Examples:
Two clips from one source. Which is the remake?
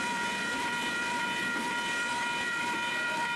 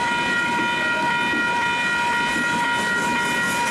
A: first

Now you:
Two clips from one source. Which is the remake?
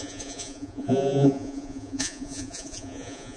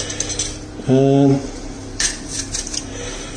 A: first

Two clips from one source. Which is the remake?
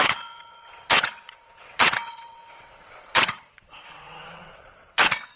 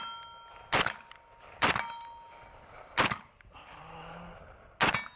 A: first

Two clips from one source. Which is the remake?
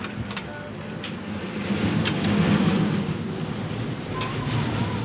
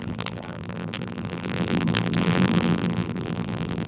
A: second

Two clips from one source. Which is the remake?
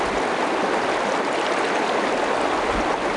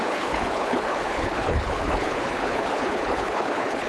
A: second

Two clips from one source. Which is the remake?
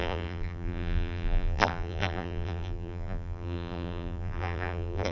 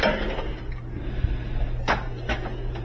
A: first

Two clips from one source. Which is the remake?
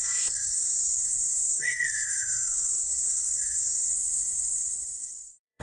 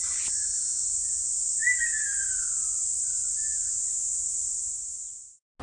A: first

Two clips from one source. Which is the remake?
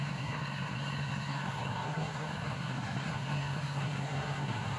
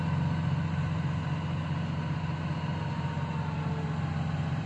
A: first